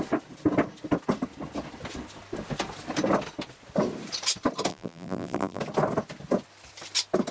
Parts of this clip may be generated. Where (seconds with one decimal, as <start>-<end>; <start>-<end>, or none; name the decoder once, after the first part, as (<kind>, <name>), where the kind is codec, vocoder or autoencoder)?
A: 4.7-5.6 (vocoder, BigVGAN v2)